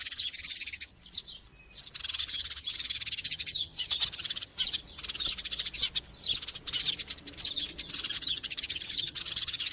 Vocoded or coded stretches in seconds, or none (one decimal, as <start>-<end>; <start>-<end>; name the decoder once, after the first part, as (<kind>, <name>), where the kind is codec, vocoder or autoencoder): 0.0-1.0 (vocoder, HiFi-GAN); 2.0-4.5; 7.9-9.7